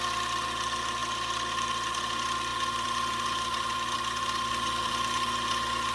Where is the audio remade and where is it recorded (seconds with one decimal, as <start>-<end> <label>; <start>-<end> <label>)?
0.0-2.5 recorded; 2.5-4.9 remade; 4.9-5.9 recorded